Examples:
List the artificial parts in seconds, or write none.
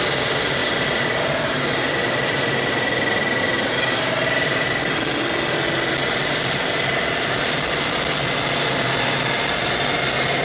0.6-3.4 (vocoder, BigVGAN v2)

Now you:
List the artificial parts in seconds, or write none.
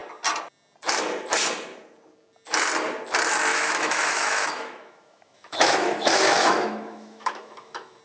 3.5-8.0 (autoencoder, DAC-VAE)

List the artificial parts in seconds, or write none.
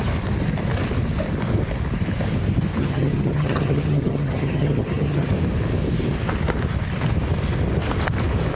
2.8-5.3 (vocoder, HiFi-GAN)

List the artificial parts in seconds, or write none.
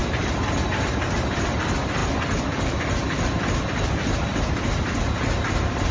0.0-1.6 (vocoder, BigVGAN v2)